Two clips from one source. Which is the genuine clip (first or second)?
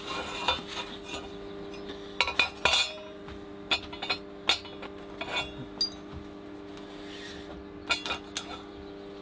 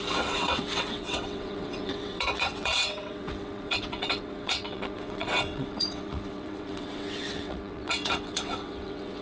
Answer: first